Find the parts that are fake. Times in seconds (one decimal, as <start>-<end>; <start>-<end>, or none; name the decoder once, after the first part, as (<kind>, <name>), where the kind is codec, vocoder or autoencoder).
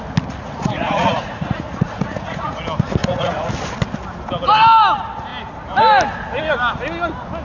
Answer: 0.4-2.6 (vocoder, Vocos); 3.0-3.5